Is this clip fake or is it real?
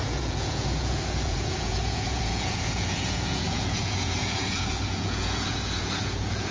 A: fake